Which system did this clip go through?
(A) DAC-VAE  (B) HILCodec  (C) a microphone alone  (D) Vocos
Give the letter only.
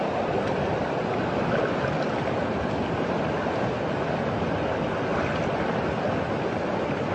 C